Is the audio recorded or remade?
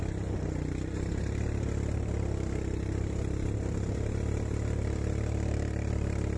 recorded